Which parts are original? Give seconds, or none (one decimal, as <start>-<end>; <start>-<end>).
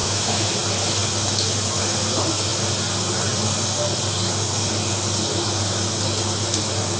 0.5-7.0